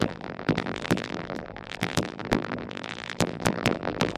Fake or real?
fake